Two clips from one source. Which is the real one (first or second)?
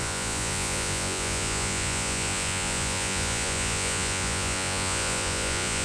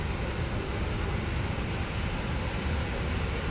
second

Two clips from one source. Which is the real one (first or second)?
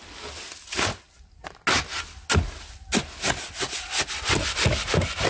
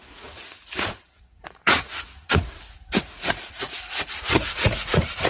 first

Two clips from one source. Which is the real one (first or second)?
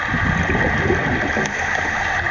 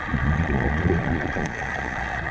first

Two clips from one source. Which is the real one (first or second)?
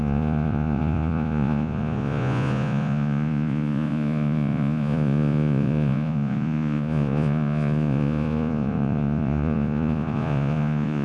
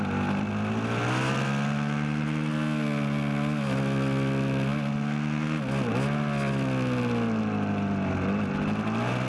second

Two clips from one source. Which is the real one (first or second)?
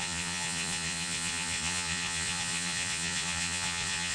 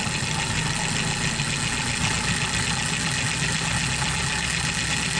second